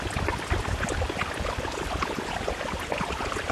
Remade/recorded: recorded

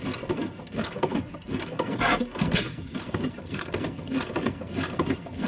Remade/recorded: remade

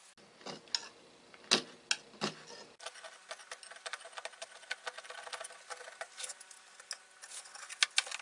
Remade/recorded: recorded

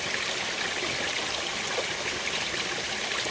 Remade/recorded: recorded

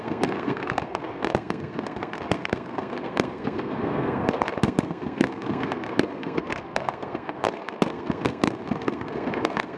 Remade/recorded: remade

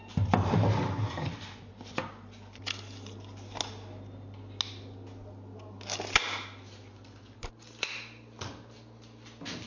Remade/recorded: recorded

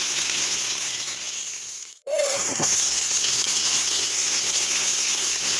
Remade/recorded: remade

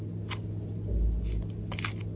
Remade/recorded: recorded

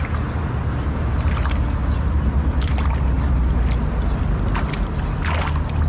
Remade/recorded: recorded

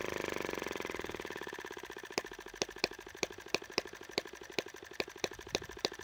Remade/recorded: recorded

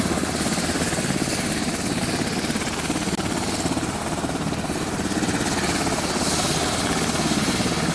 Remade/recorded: recorded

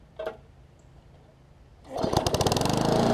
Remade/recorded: recorded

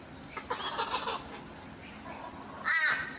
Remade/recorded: recorded